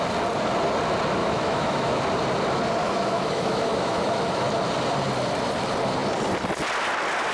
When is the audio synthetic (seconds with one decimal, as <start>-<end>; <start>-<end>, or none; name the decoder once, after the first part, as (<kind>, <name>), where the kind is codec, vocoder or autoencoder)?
1.2-2.0 (autoencoder, DAC-VAE); 2.8-4.2